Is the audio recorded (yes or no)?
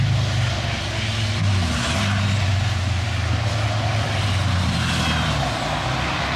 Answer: yes